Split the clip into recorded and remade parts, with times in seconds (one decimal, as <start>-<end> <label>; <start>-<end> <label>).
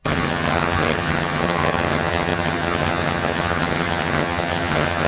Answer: 0.0-5.1 remade